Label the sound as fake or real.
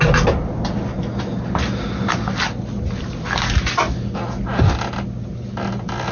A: real